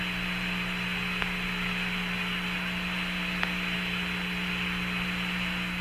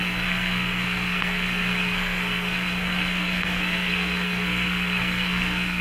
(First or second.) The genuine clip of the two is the first